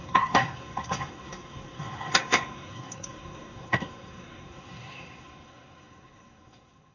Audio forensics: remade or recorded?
remade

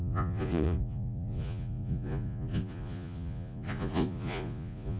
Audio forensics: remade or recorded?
remade